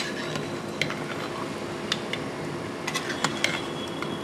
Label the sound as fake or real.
real